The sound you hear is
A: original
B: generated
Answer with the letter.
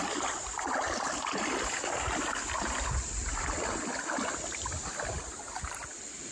A